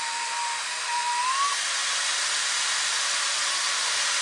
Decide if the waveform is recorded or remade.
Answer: recorded